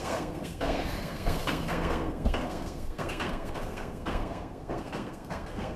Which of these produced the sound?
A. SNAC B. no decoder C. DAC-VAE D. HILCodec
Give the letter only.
A